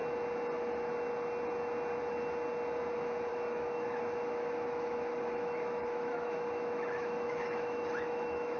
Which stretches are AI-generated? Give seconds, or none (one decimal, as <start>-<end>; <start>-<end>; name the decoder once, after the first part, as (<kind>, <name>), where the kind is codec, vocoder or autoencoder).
3.3-8.6 (autoencoder, DAC-VAE)